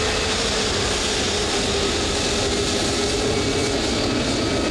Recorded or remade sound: recorded